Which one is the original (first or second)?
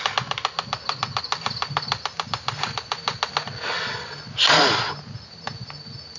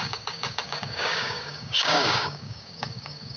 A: first